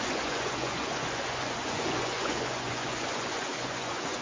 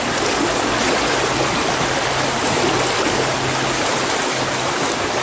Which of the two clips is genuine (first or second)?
second